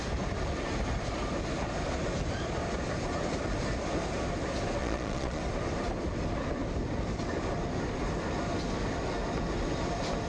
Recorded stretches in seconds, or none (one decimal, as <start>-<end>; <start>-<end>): 0.0-4.8; 5.4-10.3